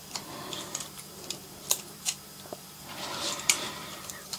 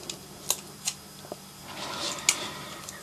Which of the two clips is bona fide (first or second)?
second